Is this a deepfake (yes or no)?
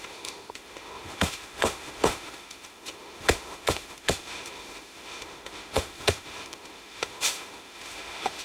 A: yes